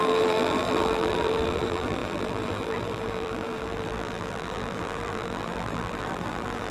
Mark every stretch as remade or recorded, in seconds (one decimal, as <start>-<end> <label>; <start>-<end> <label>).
0.0-6.7 remade